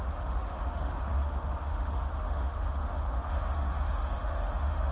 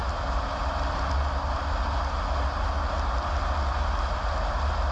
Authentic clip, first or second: second